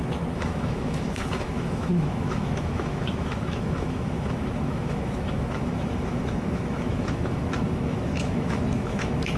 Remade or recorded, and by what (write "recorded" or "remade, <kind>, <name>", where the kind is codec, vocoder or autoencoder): remade, autoencoder, DAC-VAE